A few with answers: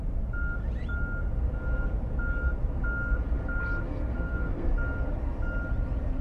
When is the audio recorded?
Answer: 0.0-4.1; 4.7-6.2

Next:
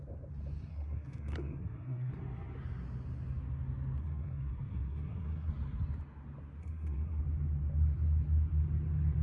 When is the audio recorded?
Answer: 0.0-0.7; 2.1-4.0; 5.5-6.6; 7.2-9.2

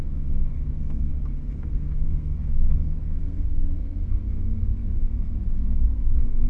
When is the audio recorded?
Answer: 1.1-1.6

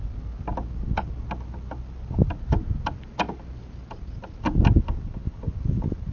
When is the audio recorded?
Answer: 0.0-6.1

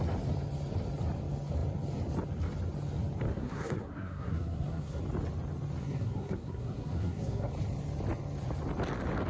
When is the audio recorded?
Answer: 0.0-3.3; 5.0-5.8; 7.5-9.3

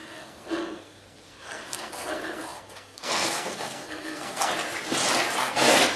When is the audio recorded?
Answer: 4.5-5.4

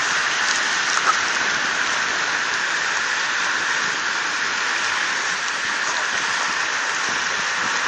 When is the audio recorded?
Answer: 0.0-7.9

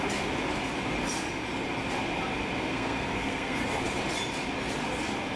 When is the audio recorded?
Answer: 0.0-2.7; 3.6-5.4